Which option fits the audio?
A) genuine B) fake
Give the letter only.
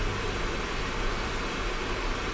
A